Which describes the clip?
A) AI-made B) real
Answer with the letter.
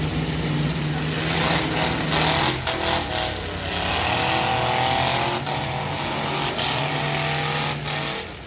B